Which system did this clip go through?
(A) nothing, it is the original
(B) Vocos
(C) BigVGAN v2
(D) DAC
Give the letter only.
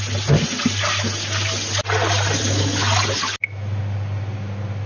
A